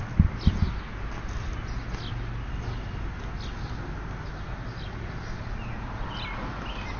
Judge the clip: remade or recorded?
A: recorded